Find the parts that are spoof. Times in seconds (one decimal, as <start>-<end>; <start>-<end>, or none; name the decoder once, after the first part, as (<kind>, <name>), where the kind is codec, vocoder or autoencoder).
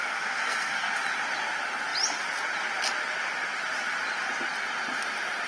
0.0-0.9 (codec, SNAC)